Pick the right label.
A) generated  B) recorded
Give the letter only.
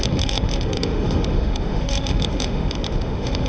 A